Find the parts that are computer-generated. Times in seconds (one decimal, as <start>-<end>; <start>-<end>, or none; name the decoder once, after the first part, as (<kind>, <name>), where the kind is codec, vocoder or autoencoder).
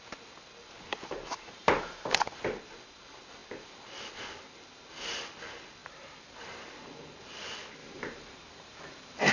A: 0.9-2.4 (vocoder, BigVGAN v2); 5.8-6.8; 7.8-9.3